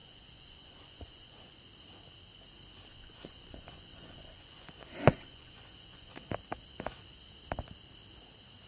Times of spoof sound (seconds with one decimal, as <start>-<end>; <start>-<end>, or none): 0.0-1.6; 2.9-6.2